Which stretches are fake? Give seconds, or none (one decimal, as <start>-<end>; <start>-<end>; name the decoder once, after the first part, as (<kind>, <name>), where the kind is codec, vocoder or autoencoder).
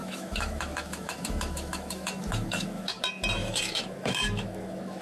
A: 0.0-3.0 (autoencoder, DAC-VAE); 3.4-5.0